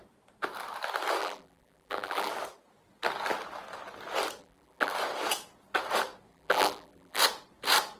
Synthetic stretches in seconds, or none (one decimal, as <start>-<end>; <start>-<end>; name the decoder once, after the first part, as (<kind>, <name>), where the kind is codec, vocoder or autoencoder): 1.2-2.3 (vocoder, BigVGAN v2); 4.4-4.9; 6.3-7.2